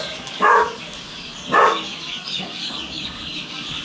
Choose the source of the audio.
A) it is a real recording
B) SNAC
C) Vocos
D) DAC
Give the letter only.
D